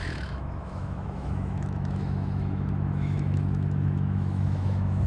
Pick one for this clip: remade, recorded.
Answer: remade